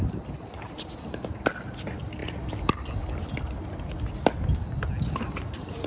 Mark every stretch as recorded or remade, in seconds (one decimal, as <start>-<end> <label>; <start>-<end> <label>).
0.0-5.9 recorded